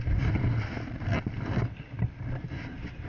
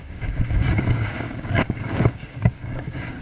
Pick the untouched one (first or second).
first